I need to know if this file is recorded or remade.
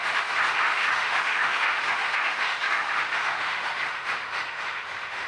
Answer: remade